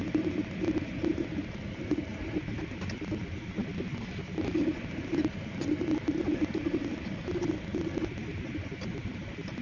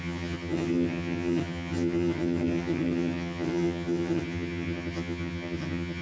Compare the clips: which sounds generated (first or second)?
second